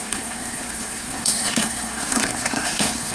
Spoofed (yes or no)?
yes